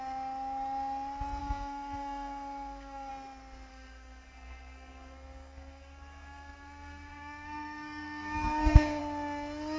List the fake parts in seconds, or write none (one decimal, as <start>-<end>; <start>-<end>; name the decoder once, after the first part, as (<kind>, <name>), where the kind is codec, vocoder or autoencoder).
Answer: 1.4-3.1 (codec, SNAC); 3.7-9.0